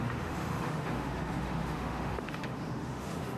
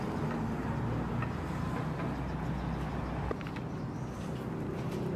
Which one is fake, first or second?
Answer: first